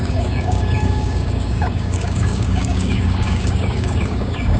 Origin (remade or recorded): remade